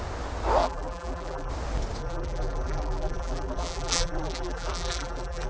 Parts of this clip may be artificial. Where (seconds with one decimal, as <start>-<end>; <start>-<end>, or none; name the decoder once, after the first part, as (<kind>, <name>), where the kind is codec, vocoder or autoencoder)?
0.6-1.5 (vocoder, BigVGAN v2); 2.0-5.5